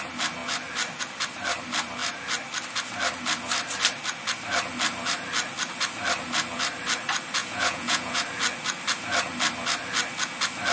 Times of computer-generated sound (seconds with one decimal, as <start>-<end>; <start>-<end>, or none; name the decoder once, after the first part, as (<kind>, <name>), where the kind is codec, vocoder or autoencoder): 7.4-8.2 (vocoder, Vocos)